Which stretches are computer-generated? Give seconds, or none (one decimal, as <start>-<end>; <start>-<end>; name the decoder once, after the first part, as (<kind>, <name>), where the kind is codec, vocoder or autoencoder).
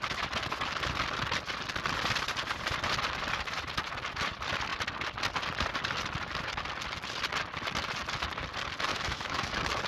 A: 8.9-9.5 (autoencoder, DAC-VAE)